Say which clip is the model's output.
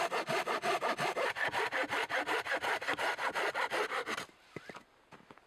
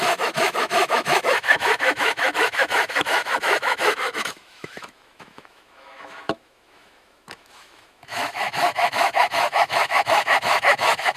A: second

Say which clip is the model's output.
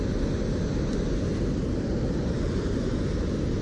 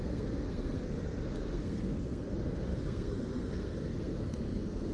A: second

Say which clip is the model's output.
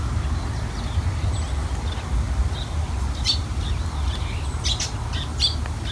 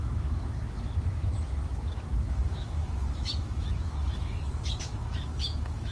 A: second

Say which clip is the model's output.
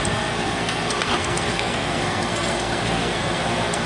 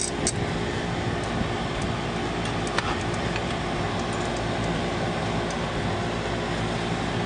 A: first